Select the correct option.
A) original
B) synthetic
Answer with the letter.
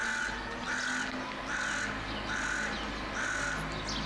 A